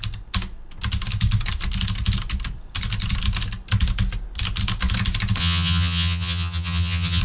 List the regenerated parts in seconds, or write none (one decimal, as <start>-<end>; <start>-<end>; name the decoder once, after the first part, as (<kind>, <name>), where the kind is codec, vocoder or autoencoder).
5.4-7.2 (vocoder, HiFi-GAN)

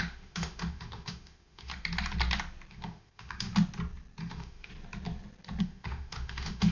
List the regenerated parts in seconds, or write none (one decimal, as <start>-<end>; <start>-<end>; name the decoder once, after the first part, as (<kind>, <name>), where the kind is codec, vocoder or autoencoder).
0.0-1.7 (autoencoder, DAC-VAE); 2.7-3.5; 4.2-4.7; 5.6-6.7

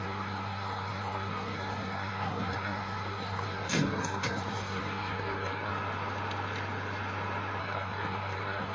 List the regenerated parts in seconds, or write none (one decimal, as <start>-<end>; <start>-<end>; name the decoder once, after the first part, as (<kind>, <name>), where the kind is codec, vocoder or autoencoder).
0.0-5.7 (codec, SNAC); 7.6-8.7

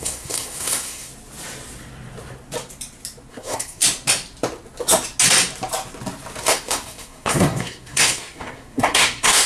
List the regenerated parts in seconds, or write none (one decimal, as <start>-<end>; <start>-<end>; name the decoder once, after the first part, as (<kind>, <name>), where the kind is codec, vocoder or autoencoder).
0.0-1.1 (codec, SNAC); 3.3-3.8; 6.4-9.5

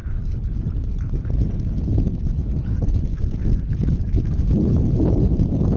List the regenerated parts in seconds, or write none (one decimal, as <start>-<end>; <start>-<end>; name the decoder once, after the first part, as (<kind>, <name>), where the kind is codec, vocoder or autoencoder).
0.0-3.1 (codec, HILCodec); 3.6-5.8

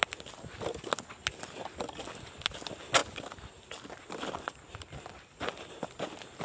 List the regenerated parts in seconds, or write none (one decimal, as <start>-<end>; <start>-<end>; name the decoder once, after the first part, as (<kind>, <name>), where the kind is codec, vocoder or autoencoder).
none

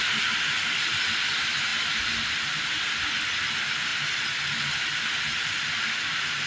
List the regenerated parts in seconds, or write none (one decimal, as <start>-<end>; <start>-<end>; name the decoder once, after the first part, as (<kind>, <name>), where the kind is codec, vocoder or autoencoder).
none